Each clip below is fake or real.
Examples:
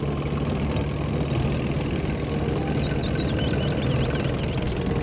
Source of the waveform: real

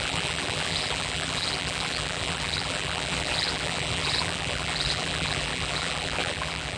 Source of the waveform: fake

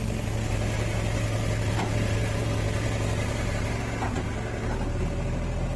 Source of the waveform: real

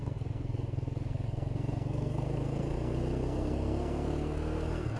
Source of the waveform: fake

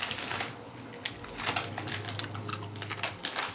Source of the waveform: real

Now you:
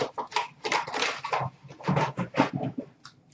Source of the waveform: real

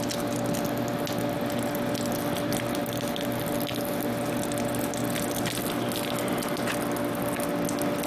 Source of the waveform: real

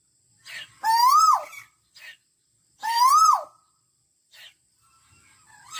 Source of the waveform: fake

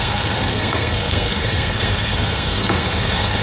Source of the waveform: fake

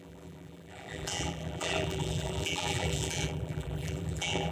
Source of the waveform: fake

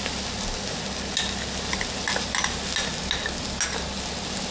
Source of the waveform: real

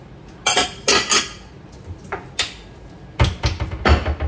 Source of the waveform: real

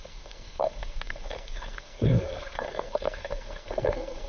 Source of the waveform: fake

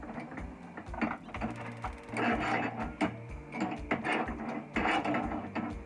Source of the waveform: real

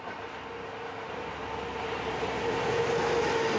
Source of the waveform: real